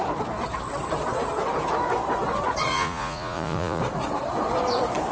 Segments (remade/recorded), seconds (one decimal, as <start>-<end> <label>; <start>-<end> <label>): 0.0-2.7 recorded; 2.7-3.8 remade; 3.8-5.1 recorded